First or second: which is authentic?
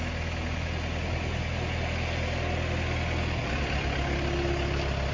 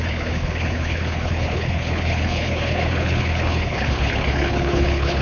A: first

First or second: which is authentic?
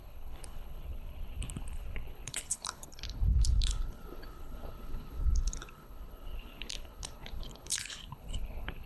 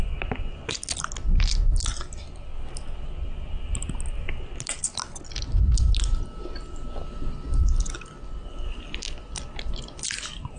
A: second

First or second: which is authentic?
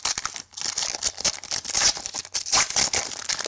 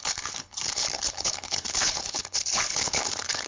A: first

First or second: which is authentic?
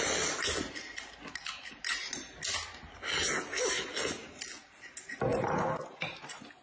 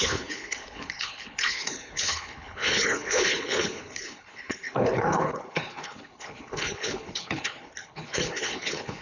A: first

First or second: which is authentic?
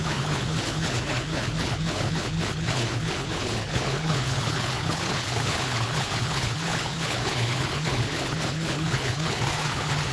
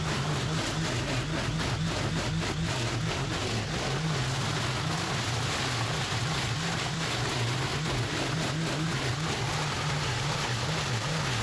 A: second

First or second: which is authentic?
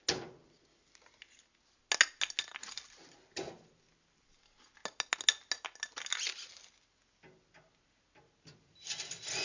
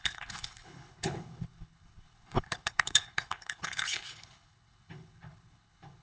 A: first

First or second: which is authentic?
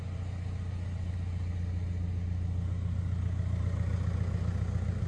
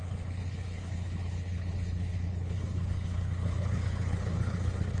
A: first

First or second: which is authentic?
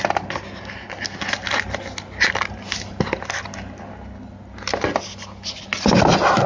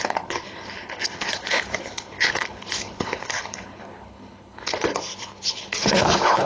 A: first